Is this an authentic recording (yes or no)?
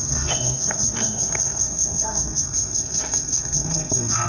no